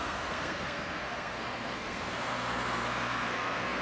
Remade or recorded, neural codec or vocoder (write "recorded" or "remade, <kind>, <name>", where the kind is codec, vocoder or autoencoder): remade, codec, SNAC